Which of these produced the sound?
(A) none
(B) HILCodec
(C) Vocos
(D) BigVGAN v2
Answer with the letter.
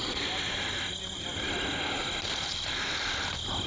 A